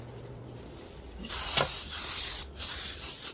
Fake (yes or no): no